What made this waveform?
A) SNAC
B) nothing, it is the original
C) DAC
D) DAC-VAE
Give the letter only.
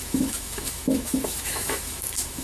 D